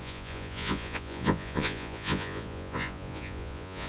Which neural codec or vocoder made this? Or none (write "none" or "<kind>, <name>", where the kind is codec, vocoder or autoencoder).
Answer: vocoder, Vocos